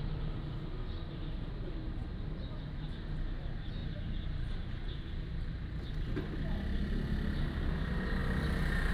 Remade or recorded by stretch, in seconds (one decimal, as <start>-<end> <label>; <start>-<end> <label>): 0.0-3.8 recorded; 3.8-5.9 remade; 5.9-8.9 recorded